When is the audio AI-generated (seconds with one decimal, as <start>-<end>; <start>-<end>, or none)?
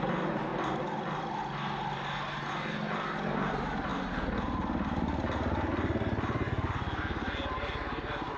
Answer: none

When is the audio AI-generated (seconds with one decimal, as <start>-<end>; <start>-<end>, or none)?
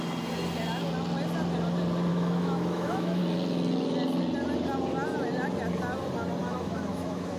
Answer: 2.1-3.2; 6.4-7.4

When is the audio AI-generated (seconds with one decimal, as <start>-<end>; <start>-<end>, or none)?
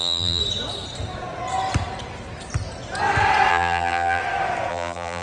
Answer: 0.0-0.4; 3.5-4.2; 4.7-5.2